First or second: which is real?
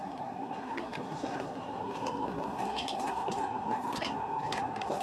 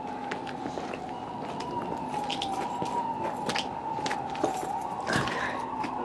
second